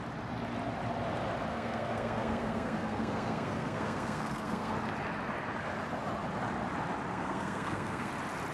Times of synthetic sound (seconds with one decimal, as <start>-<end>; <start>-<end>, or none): 1.5-4.7; 7.1-8.1